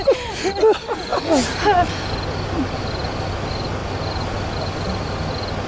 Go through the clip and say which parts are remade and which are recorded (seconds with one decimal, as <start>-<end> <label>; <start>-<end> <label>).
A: 0.0-5.7 recorded

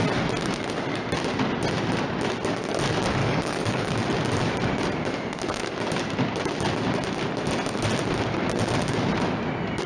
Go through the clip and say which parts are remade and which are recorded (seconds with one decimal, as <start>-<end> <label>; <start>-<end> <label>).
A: 0.0-3.2 recorded; 3.2-3.9 remade; 3.9-9.9 recorded

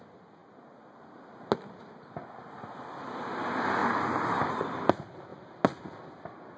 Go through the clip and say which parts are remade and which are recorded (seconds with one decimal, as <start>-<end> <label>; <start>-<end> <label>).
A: 0.0-6.6 recorded

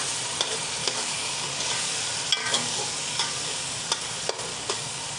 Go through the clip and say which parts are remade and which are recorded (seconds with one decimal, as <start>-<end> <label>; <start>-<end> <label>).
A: 0.0-0.8 recorded; 0.8-2.0 remade; 2.0-2.4 recorded; 2.4-3.7 remade; 3.7-4.5 recorded; 4.5-5.2 remade

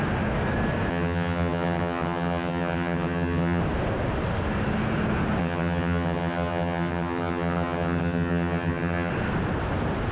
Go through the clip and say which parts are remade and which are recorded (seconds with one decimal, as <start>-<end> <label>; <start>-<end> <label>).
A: 0.0-0.9 recorded; 0.9-3.6 remade; 3.6-5.4 recorded; 5.4-9.1 remade; 9.1-10.1 recorded

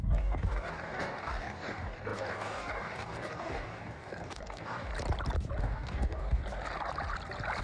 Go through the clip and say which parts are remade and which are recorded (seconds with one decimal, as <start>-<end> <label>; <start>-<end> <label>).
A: 0.0-4.9 remade; 4.9-5.6 recorded; 5.6-6.4 remade; 6.4-7.6 recorded

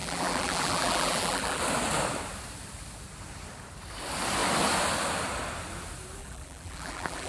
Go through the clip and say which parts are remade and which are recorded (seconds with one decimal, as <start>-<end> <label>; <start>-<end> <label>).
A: 0.0-1.6 remade; 1.6-6.2 recorded; 6.2-7.3 remade

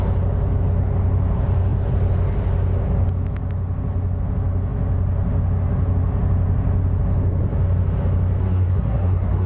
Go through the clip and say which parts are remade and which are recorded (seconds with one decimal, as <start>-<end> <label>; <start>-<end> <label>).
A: 0.0-8.4 recorded; 8.4-9.5 remade